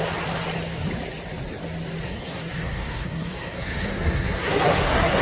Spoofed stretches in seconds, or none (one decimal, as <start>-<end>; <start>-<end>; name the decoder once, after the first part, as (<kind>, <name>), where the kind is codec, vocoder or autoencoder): 2.0-5.2 (codec, SNAC)